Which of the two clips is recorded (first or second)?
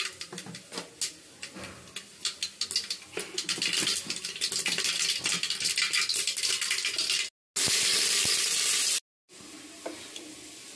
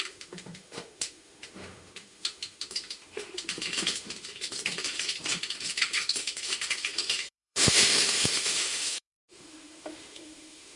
first